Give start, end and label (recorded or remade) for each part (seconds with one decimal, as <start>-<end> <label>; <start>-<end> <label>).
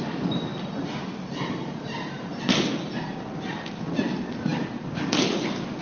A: 0.0-4.5 recorded; 4.5-5.8 remade